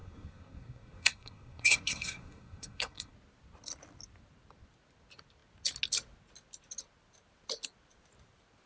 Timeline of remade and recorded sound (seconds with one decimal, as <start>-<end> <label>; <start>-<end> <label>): 0.0-3.1 remade; 3.1-8.7 recorded